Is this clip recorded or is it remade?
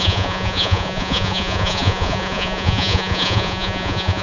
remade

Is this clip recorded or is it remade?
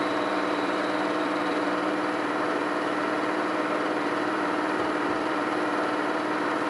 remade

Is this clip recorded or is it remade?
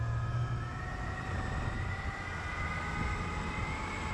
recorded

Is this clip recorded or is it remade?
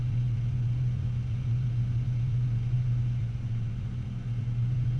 remade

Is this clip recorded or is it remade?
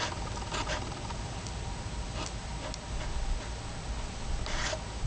recorded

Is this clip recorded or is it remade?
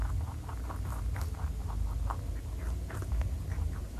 recorded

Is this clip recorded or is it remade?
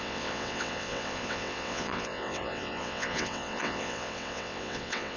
remade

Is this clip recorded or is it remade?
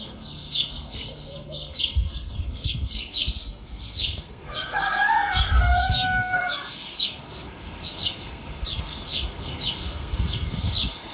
remade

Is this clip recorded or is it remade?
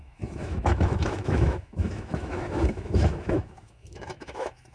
remade